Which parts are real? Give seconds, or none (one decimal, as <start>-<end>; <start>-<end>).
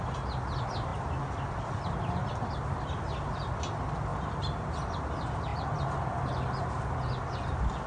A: 0.0-7.9